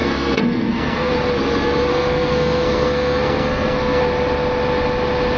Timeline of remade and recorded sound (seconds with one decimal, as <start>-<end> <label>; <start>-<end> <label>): 0.0-1.1 remade; 1.1-1.9 recorded; 1.9-4.0 remade; 4.0-5.4 recorded